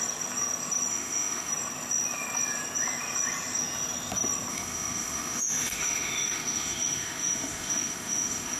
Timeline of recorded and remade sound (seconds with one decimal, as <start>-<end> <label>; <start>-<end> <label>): 0.0-0.9 recorded; 0.9-1.5 remade; 1.5-4.5 recorded; 4.5-8.6 remade